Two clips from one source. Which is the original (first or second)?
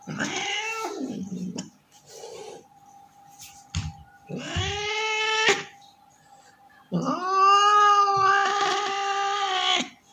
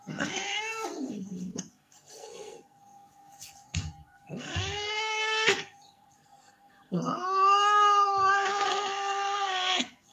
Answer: first